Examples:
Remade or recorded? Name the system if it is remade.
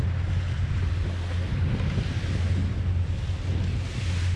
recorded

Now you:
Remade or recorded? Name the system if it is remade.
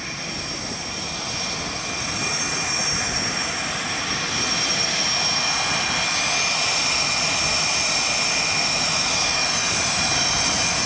recorded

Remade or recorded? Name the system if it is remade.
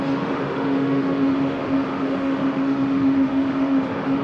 remade, autoencoder, DAC-VAE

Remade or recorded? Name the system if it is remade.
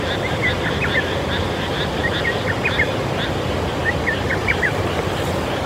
recorded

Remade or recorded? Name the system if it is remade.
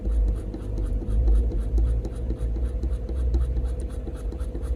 remade, vocoder, BigVGAN v2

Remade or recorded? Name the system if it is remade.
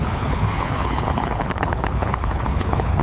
remade, codec, HILCodec